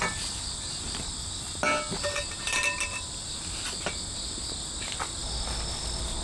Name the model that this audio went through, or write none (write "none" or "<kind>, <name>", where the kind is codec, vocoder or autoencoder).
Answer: none